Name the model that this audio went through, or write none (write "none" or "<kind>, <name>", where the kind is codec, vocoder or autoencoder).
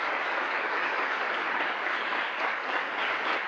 codec, DAC